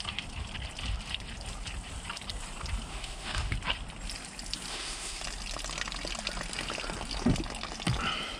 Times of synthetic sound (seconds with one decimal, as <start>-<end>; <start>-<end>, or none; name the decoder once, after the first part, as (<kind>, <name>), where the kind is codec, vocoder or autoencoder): 2.9-3.5 (autoencoder, DAC-VAE); 4.7-5.2